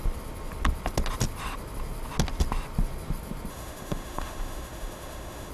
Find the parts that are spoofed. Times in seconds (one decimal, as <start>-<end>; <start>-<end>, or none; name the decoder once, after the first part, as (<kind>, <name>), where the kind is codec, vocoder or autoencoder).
3.5-5.5 (autoencoder, DAC-VAE)